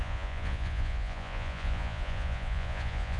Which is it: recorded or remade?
remade